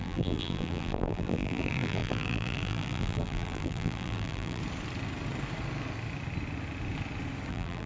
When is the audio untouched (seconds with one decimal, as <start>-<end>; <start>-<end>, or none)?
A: 4.6-7.5